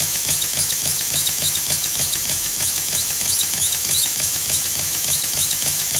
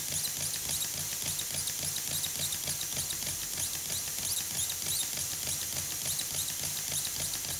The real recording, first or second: second